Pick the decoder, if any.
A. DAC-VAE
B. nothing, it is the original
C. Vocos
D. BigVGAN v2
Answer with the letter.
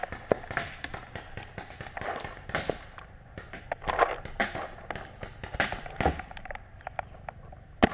B